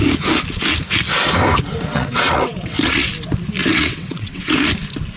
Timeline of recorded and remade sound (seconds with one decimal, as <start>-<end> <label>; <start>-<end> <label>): 0.0-1.9 recorded; 1.9-3.1 remade; 3.1-3.6 recorded; 3.6-4.7 remade; 4.7-5.2 recorded